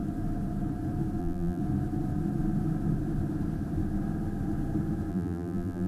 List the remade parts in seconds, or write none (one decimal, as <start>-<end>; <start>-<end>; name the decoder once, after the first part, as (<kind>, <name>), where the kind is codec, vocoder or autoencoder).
1.2-1.6 (vocoder, BigVGAN v2); 5.1-5.9